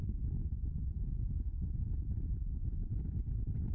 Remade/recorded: recorded